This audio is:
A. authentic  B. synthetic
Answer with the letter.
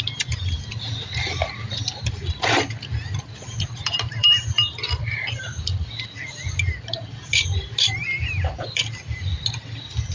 B